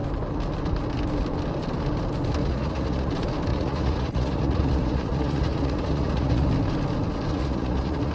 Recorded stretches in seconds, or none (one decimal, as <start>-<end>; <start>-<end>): 0.0-2.4; 3.1-3.5; 6.5-7.3